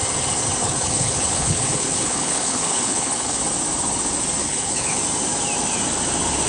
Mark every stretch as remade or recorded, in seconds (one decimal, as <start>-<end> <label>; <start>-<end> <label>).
0.0-0.6 recorded; 0.6-3.4 remade; 3.4-4.4 recorded; 4.4-5.0 remade; 5.0-6.5 recorded